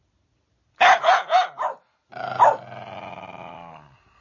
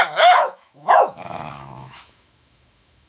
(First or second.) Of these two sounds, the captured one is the first